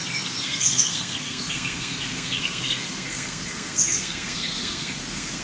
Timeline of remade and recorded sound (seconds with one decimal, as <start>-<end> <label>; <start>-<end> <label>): 0.0-5.4 remade